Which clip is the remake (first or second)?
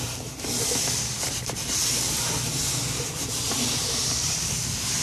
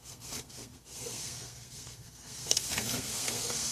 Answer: second